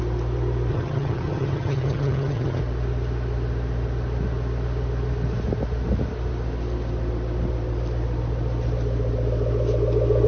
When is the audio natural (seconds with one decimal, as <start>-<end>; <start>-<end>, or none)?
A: 0.0-0.7; 2.6-10.3